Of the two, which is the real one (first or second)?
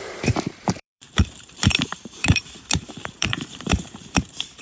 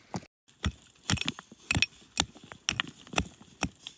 second